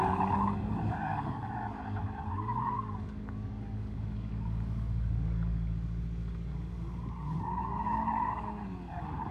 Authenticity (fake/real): fake